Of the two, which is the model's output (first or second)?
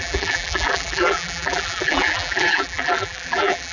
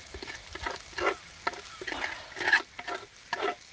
first